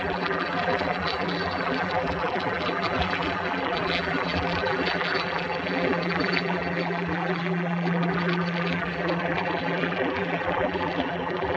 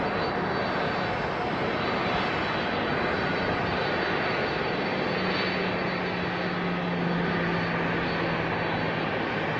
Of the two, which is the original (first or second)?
second